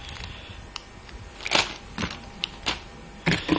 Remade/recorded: remade